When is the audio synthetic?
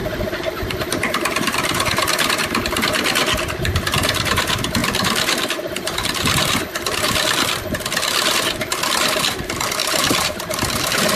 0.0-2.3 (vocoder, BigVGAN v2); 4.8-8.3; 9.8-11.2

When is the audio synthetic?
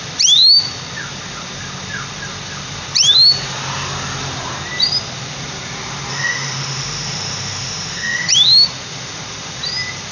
6.1-8.3 (autoencoder, DAC-VAE)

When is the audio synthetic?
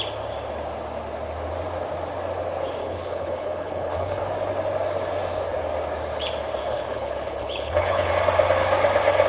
2.8-4.2 (codec, HILCodec); 6.6-8.1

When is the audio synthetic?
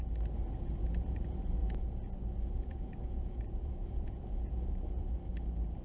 1.6-5.1 (vocoder, Vocos)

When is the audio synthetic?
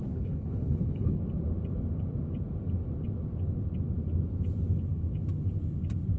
0.0-1.2 (codec, HILCodec)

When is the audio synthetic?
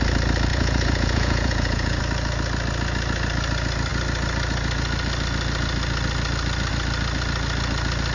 0.5-2.0 (vocoder, Vocos)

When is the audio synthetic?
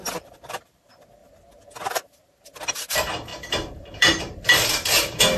0.0-1.2 (vocoder, BigVGAN v2); 1.9-5.4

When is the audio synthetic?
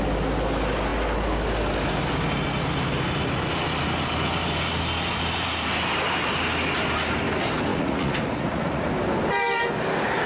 7.7-8.9 (vocoder, Vocos)